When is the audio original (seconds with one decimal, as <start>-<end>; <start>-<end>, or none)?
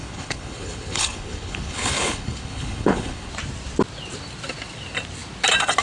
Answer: 3.3-5.8